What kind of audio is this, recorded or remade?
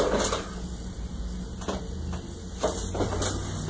recorded